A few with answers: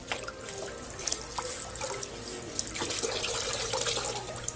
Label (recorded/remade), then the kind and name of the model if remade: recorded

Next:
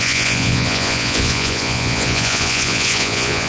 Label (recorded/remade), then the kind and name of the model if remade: remade, vocoder, Vocos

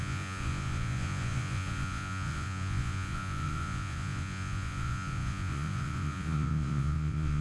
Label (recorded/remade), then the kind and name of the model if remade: remade, vocoder, Vocos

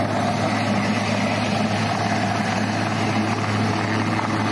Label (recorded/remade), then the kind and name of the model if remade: recorded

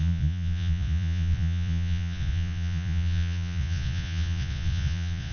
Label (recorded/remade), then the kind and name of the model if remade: remade, vocoder, Vocos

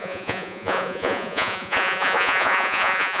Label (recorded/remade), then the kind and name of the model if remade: remade, vocoder, Vocos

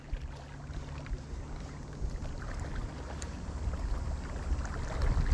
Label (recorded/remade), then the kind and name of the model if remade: recorded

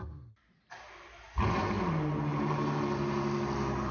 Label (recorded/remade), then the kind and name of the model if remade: recorded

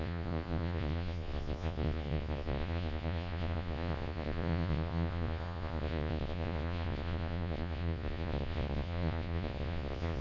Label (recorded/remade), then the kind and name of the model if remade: remade, vocoder, Vocos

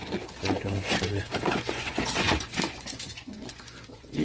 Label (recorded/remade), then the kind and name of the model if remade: remade, vocoder, Vocos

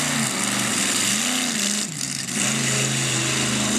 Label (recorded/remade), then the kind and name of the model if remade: recorded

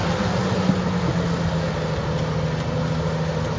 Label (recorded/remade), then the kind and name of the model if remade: recorded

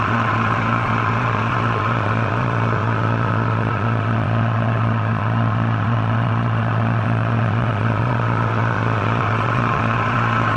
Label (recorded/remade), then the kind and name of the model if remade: remade, vocoder, Vocos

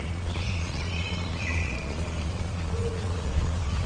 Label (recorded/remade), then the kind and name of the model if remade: remade, vocoder, Vocos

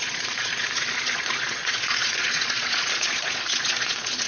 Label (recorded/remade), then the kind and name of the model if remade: remade, vocoder, Vocos